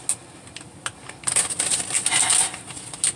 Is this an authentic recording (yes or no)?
yes